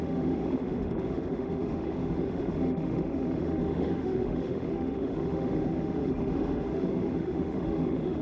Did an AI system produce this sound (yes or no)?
yes